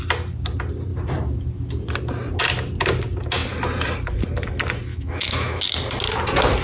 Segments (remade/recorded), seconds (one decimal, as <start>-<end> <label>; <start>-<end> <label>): 0.0-4.9 recorded; 4.9-5.6 remade; 5.6-6.6 recorded